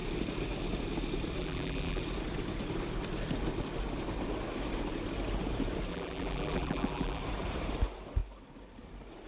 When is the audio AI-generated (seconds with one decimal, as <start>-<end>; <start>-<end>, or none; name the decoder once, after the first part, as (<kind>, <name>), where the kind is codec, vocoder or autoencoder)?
1.4-2.0 (vocoder, BigVGAN v2); 5.9-7.2